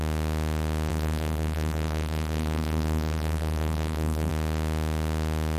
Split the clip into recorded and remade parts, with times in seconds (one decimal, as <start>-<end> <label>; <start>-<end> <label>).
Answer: 0.0-0.9 recorded; 0.9-4.3 remade; 4.3-5.6 recorded

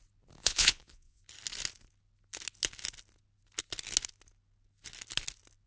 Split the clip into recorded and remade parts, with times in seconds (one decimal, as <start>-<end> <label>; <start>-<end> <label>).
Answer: 0.0-0.4 recorded; 0.4-1.2 remade; 1.2-5.7 recorded